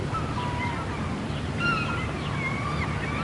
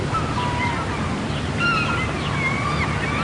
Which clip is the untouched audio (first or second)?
second